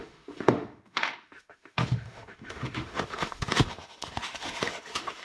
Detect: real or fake fake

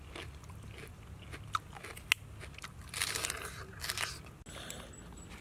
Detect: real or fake real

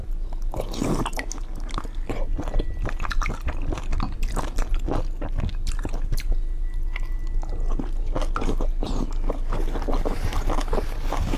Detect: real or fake real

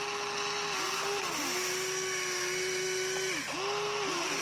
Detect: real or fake real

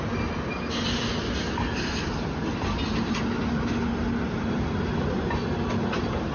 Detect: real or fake real